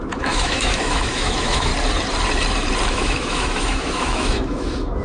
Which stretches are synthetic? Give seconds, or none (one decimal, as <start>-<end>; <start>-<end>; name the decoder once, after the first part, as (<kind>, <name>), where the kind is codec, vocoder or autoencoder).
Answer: 0.0-1.7 (autoencoder, DAC-VAE); 2.9-5.0